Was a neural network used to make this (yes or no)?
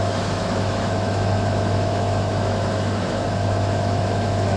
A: yes